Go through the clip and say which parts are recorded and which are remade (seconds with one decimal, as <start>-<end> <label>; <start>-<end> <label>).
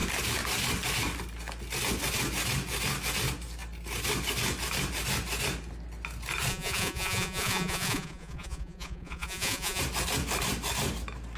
0.0-6.5 recorded; 6.5-9.8 remade; 9.8-11.4 recorded